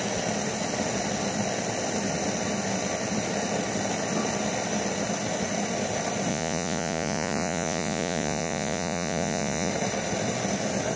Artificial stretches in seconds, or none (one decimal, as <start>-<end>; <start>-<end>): 6.3-9.7